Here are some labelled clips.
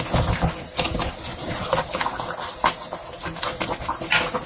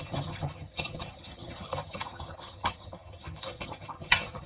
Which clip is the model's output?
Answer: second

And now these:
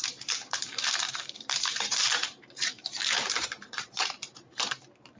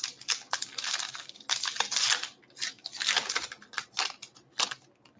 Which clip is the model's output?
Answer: first